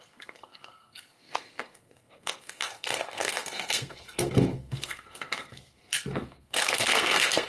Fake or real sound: fake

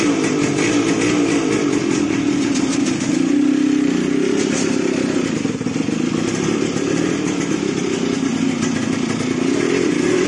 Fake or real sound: real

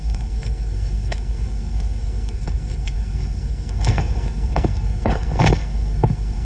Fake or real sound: fake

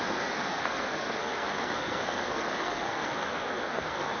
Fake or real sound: fake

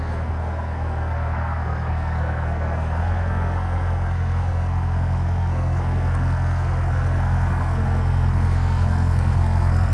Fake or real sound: fake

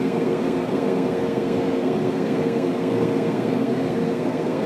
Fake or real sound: fake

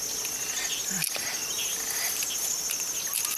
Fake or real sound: real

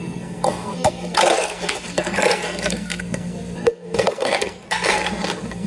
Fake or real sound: fake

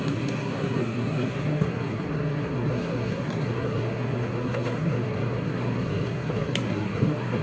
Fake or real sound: fake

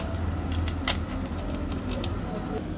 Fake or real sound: real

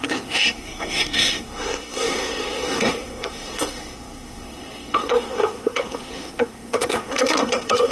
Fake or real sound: fake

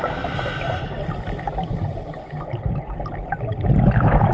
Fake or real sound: real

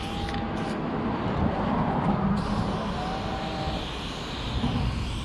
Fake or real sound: real